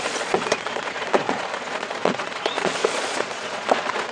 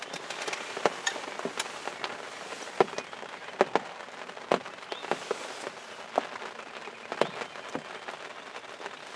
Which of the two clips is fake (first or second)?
first